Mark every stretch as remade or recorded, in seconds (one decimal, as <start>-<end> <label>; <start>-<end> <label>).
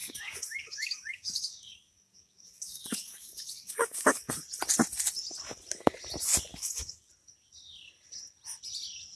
0.0-4.3 remade; 4.3-6.5 recorded; 6.5-7.1 remade; 7.1-9.2 recorded